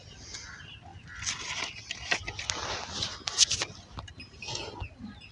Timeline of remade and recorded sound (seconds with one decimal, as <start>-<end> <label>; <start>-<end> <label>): 0.0-5.3 recorded